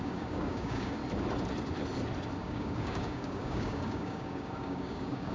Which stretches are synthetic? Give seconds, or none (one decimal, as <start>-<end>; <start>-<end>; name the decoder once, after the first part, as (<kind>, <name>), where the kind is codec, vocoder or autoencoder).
0.0-1.0 (codec, DAC); 2.4-5.3